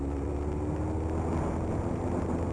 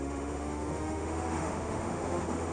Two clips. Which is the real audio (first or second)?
first